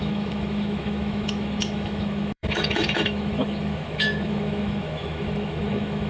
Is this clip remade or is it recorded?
remade